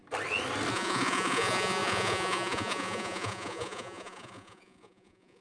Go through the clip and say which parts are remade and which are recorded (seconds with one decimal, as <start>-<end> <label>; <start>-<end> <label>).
0.0-0.7 recorded; 0.7-5.4 remade